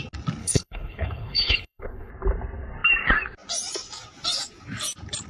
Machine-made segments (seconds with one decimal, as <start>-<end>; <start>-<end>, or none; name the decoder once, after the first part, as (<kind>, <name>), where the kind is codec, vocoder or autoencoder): 0.4-2.1 (codec, HILCodec)